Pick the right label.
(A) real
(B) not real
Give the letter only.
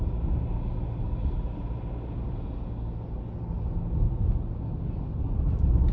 A